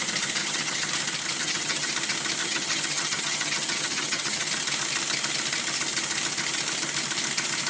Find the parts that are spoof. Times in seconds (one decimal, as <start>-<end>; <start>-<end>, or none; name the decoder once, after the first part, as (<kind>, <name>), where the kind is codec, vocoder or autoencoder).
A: 0.4-0.9 (vocoder, HiFi-GAN); 1.4-1.9; 2.4-4.5